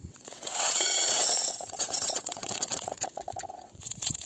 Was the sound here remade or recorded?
remade